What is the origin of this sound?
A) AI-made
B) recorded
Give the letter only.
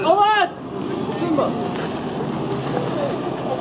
B